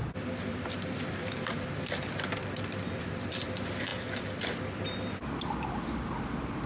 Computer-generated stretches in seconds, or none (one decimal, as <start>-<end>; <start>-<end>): 0.0-3.9; 4.4-6.7

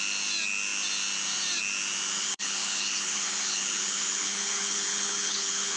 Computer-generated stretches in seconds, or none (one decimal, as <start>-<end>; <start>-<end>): 2.2-5.8